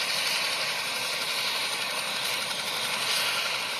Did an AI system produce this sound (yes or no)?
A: no